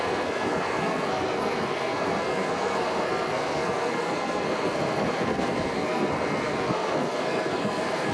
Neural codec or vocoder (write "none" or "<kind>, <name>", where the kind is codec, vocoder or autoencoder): codec, SNAC